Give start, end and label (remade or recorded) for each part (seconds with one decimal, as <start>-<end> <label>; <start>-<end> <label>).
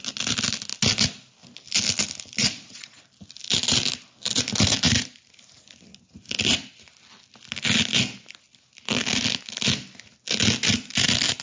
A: 0.0-2.4 recorded; 2.4-3.0 remade; 3.0-11.4 recorded